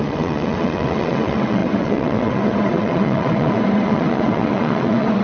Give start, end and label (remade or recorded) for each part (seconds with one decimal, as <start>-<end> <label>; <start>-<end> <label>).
0.0-5.2 remade